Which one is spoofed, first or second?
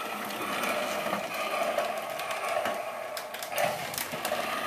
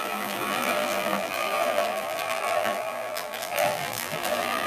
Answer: second